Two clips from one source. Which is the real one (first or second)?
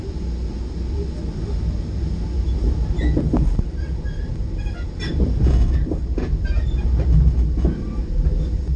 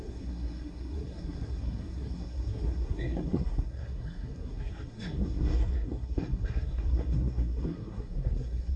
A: first